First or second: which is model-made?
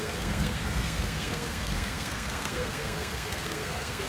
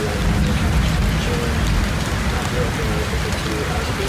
first